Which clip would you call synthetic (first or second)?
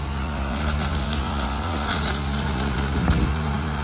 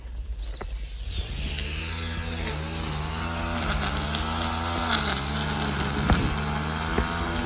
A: first